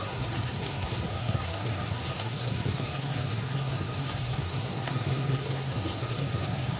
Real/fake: fake